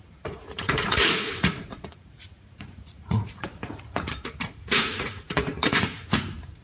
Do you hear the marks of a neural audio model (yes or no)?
yes